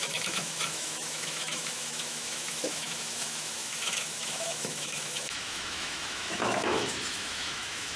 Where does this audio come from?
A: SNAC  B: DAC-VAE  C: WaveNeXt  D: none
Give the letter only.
B